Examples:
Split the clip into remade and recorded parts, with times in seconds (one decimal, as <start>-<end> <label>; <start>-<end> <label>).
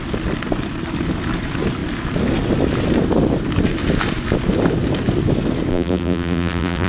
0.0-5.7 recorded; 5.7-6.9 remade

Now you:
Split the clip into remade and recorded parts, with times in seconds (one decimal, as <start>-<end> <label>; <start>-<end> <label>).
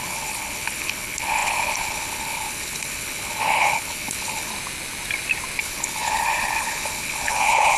0.0-4.5 remade; 4.5-5.6 recorded; 5.6-7.8 remade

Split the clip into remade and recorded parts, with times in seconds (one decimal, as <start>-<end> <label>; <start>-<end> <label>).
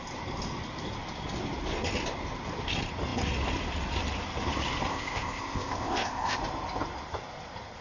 0.0-4.9 recorded; 4.9-6.4 remade; 6.4-7.8 recorded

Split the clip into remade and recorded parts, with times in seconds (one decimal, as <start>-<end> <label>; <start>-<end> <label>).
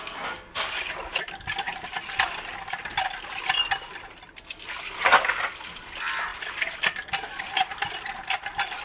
0.0-8.8 recorded